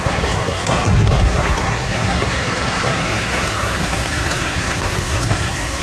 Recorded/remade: remade